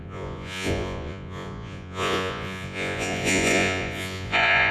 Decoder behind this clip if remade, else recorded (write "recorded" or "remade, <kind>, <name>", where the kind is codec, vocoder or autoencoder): remade, vocoder, Vocos